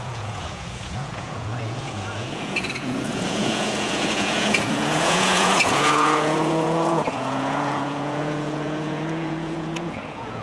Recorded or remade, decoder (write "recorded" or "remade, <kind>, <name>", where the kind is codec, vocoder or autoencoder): remade, vocoder, Vocos